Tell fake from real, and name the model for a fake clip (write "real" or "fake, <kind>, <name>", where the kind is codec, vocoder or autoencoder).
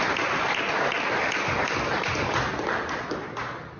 real